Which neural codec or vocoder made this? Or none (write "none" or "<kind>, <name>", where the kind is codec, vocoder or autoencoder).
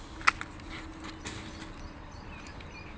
none